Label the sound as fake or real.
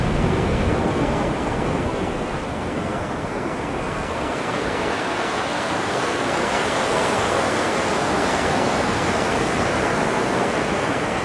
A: fake